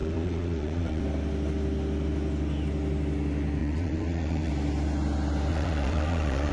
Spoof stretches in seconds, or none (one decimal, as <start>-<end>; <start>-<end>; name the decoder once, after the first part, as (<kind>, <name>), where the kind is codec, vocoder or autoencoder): 0.0-1.0 (vocoder, Vocos); 3.6-4.5; 5.5-6.5